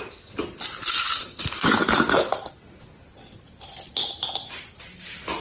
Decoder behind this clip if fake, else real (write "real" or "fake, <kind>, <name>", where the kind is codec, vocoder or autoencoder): real